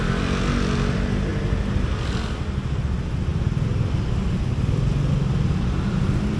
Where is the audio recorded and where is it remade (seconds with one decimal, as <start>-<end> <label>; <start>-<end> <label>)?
0.0-6.4 recorded